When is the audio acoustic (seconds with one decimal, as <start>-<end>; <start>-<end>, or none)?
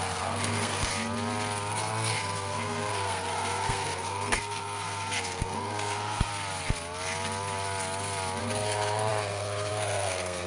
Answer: 0.9-1.7; 6.3-8.4